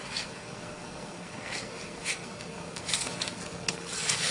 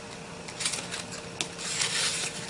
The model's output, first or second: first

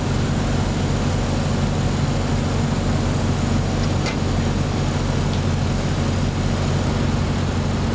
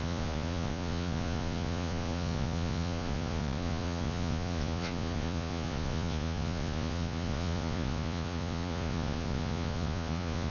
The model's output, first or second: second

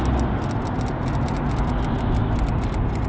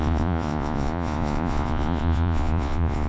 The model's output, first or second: second